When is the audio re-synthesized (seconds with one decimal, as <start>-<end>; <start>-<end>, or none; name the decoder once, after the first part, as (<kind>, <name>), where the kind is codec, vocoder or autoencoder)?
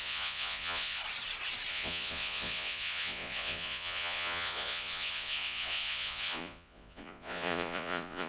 0.0-1.0 (vocoder, Vocos); 1.7-8.3